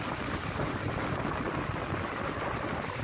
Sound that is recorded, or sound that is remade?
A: recorded